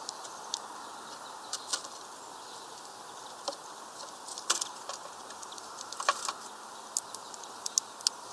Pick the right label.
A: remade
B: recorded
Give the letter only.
B